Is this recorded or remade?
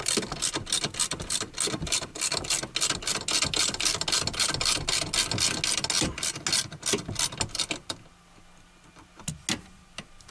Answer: recorded